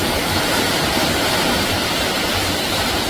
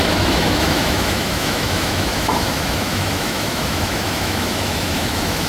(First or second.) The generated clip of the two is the second